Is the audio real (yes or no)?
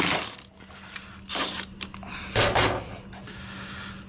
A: yes